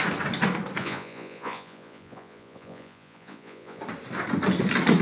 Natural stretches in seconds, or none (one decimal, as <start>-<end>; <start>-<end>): 0.0-0.8; 3.8-5.0